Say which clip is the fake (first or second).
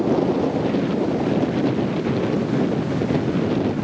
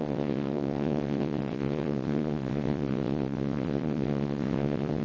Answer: second